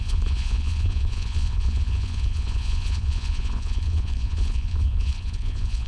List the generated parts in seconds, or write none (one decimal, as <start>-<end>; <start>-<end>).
0.0-5.9